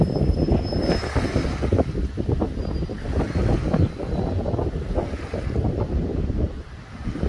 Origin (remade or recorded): recorded